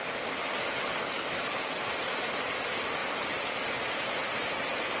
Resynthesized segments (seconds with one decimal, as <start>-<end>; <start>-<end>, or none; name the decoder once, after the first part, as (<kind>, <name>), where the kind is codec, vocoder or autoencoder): 1.0-1.8 (codec, DAC)